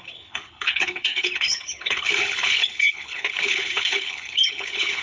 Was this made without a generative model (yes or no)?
no